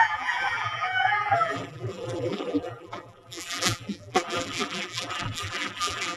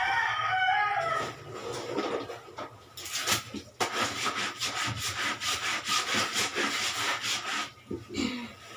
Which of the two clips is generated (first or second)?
first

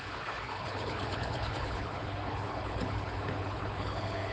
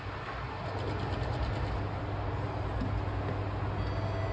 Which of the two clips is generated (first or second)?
first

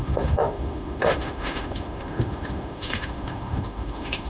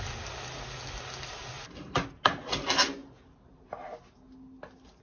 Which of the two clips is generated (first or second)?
first